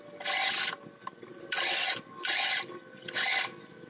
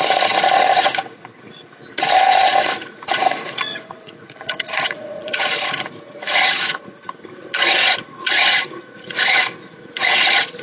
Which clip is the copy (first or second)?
second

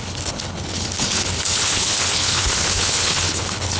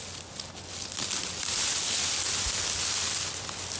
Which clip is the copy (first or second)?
first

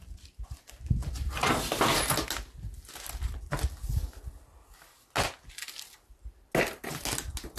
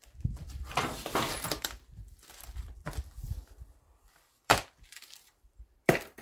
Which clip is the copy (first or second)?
second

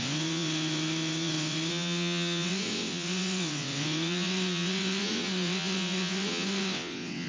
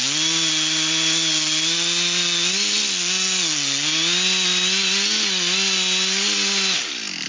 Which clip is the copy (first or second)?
first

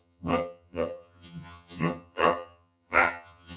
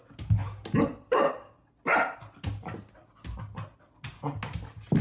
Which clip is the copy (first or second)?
first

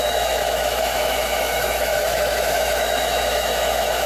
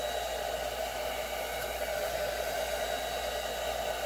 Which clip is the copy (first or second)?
first